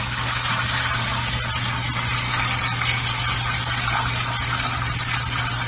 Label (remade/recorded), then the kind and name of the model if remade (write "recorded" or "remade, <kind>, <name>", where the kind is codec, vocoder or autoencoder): recorded